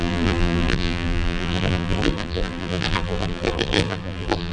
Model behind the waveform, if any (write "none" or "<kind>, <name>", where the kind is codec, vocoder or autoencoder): vocoder, BigVGAN v2